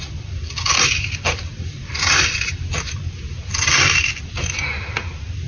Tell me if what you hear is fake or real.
fake